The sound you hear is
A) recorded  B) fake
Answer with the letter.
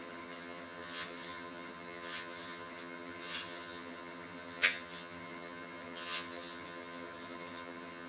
B